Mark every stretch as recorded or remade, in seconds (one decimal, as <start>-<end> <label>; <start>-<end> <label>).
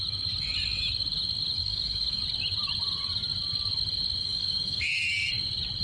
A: 0.0-1.6 recorded; 1.6-2.2 remade; 2.2-4.2 recorded; 4.2-5.3 remade; 5.3-5.8 recorded